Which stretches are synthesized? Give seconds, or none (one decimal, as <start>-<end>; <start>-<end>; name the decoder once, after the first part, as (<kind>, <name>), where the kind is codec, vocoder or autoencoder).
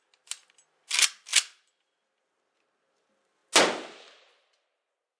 1.3-2.3 (vocoder, BigVGAN v2)